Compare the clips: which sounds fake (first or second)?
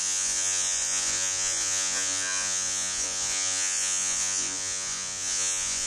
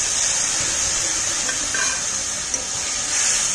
first